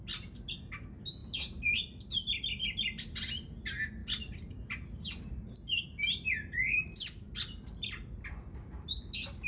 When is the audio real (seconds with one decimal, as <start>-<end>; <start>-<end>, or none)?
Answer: 0.0-9.5